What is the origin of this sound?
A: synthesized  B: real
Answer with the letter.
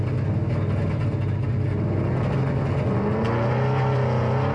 B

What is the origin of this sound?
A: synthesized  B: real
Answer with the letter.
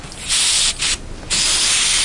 B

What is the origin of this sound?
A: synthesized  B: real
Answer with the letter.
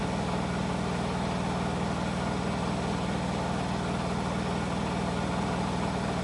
B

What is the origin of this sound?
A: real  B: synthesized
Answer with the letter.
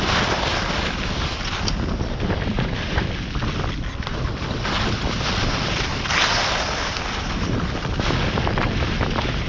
A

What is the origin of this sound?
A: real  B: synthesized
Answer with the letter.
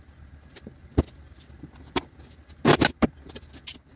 A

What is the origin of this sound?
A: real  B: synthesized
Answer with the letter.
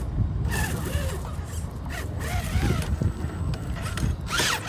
A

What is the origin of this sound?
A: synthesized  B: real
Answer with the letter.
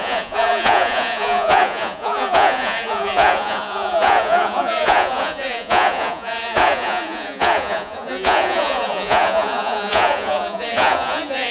A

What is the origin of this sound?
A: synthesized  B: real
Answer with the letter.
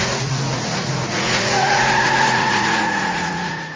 A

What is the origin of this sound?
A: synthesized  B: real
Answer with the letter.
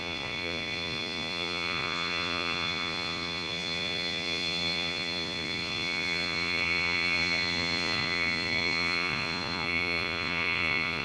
A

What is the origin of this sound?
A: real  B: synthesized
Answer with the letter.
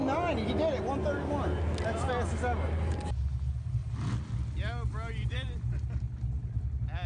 A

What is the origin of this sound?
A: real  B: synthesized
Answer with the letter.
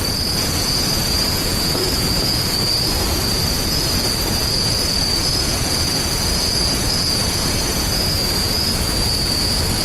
B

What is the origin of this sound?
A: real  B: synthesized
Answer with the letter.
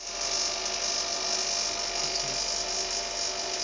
A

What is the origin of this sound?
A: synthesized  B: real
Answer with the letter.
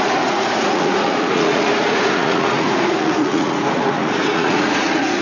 A